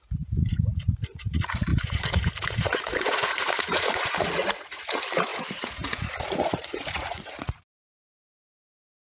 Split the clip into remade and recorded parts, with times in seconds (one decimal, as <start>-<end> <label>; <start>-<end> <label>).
0.0-9.1 remade